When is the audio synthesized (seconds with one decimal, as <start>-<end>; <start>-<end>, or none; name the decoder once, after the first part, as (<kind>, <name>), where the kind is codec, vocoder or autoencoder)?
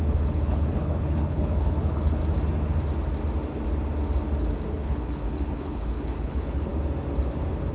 0.0-2.2 (codec, HILCodec); 4.7-6.7